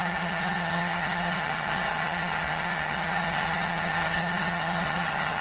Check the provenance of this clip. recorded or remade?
remade